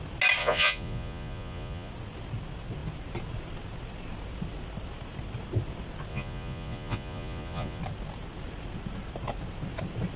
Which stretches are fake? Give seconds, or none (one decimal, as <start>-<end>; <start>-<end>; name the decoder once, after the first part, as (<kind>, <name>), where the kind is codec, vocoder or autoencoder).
0.4-1.9 (vocoder, Vocos); 6.1-7.8